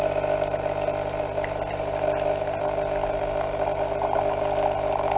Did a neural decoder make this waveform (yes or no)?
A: no